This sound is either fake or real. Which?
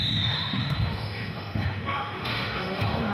fake